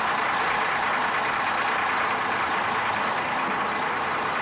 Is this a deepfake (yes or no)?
no